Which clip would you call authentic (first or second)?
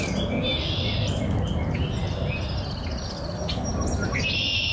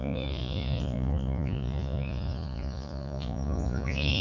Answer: first